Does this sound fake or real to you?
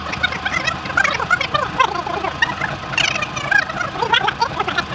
real